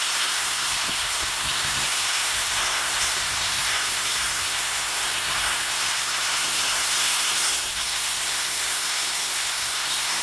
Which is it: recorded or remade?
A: remade